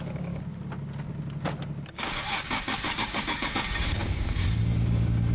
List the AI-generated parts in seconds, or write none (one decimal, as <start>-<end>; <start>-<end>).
0.0-0.5; 2.4-5.3